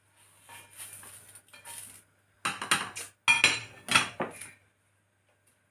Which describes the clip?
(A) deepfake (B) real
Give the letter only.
B